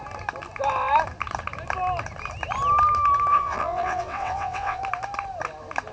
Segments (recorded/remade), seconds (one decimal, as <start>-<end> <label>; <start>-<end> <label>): 0.0-3.3 recorded; 3.3-4.8 remade; 4.8-5.9 recorded